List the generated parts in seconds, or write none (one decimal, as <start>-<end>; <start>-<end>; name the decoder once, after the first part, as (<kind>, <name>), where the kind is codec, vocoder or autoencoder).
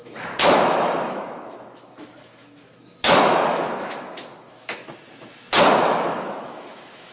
0.0-4.8 (autoencoder, DAC-VAE); 5.8-7.1